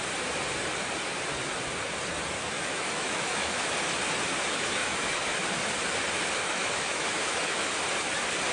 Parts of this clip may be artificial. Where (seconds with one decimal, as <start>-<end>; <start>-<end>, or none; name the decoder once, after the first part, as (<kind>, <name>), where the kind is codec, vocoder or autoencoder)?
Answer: 2.4-3.7 (autoencoder, DAC-VAE); 4.8-5.5; 6.4-7.8